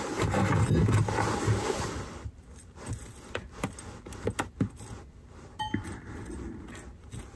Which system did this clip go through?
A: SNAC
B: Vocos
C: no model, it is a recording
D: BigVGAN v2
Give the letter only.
C